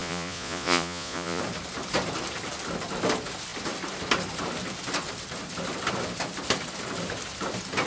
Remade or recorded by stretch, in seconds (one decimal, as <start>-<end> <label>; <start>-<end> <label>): 0.0-1.4 remade; 1.4-7.9 recorded